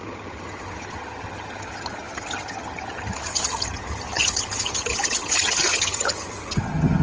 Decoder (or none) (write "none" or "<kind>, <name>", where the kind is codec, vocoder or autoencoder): vocoder, HiFi-GAN